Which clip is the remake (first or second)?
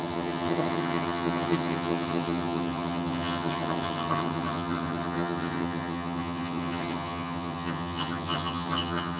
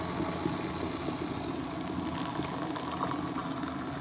first